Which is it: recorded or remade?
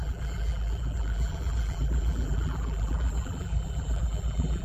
remade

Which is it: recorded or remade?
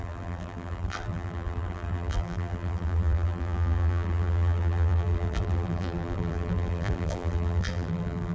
remade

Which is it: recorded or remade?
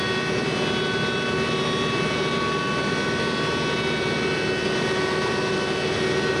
recorded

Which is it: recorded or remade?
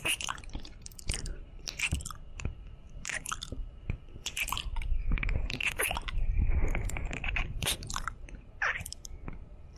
remade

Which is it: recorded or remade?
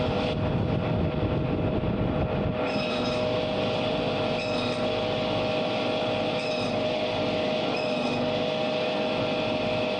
recorded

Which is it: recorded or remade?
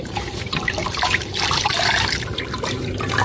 remade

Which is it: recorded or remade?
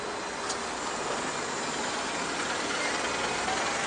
recorded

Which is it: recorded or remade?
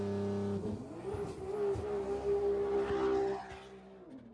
recorded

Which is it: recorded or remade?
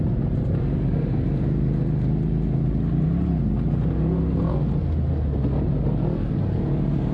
recorded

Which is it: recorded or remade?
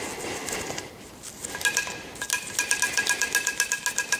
recorded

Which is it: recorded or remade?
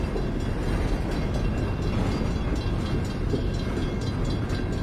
recorded